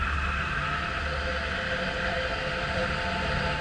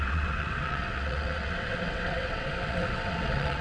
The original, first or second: first